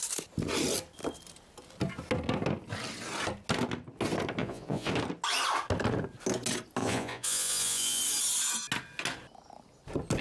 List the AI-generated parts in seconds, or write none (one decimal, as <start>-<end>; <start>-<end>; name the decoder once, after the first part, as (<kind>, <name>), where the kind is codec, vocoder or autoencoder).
4.4-4.9 (vocoder, Vocos); 6.8-8.0

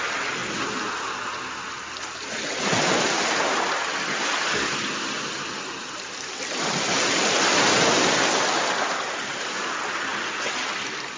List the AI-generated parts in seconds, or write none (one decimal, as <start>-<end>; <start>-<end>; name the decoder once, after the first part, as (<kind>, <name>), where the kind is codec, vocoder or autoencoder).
none

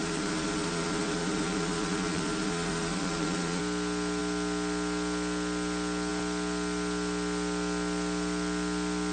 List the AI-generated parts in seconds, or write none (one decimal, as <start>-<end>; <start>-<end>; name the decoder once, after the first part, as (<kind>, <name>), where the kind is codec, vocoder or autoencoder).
0.0-3.6 (vocoder, Vocos)

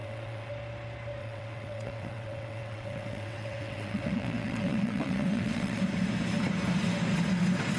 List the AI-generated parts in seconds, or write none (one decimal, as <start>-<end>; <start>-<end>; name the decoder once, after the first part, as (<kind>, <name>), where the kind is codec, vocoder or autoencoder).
0.0-0.5 (vocoder, WaveNeXt); 1.2-5.8

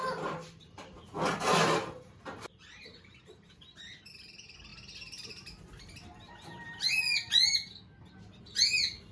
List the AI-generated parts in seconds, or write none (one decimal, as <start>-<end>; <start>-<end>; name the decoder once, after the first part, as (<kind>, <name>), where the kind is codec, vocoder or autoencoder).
0.0-1.0 (vocoder, BigVGAN v2); 1.5-4.1